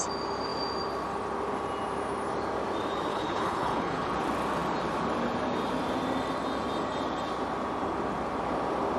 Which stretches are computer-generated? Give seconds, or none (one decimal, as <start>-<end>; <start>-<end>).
3.1-4.1